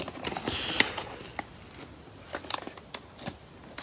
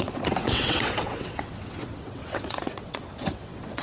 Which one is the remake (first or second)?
second